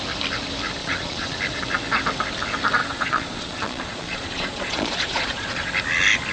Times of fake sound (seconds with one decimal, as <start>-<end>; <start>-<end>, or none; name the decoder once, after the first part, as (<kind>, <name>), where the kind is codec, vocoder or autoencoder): 0.8-1.4 (vocoder, Vocos); 2.8-5.7